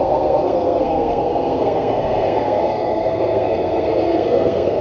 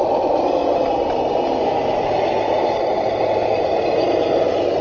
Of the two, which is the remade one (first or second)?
first